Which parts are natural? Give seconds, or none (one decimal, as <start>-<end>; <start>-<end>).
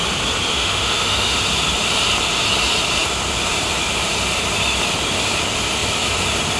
0.0-0.5; 1.4-6.6